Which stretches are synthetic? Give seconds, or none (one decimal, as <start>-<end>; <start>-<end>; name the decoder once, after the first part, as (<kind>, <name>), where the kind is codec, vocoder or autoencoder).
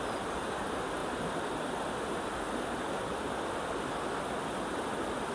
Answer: none